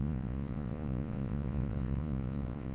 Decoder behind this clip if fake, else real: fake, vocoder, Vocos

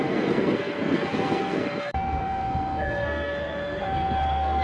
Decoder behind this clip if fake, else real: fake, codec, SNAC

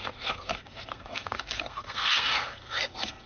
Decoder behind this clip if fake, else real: fake, codec, SNAC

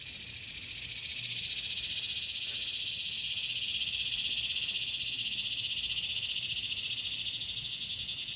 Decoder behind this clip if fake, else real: real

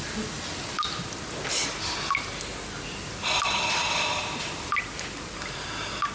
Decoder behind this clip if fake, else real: real